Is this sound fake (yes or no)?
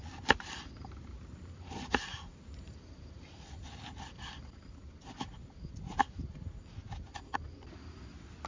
no